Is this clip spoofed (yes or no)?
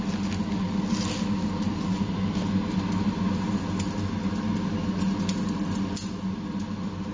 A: no